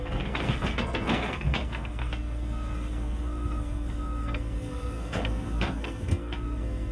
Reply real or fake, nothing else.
fake